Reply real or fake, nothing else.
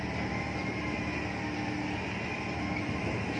real